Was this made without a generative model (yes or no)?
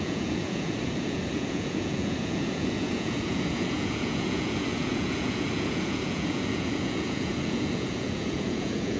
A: no